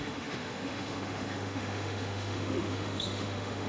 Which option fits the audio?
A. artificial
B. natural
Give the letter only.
A